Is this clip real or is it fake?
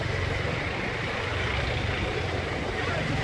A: real